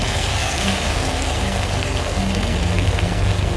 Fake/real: fake